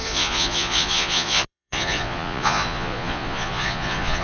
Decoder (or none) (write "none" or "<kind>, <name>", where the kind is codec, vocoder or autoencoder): vocoder, Vocos